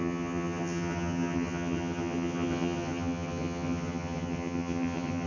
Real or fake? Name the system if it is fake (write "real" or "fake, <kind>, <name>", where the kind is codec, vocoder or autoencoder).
fake, vocoder, HiFi-GAN